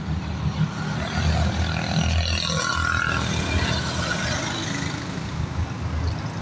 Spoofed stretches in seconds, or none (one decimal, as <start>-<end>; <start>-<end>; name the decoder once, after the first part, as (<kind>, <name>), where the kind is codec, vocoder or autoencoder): none